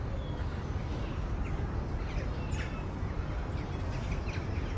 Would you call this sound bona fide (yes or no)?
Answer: yes